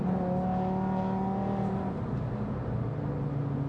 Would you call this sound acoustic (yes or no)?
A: yes